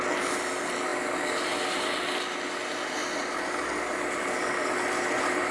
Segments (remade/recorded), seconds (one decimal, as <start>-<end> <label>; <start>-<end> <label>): 0.0-5.5 recorded